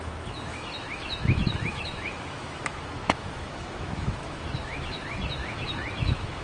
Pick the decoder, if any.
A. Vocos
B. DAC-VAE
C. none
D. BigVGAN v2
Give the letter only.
B